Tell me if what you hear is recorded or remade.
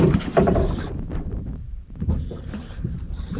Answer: remade